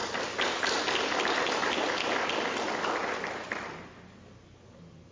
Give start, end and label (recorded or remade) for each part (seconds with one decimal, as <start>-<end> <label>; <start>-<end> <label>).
0.0-5.1 recorded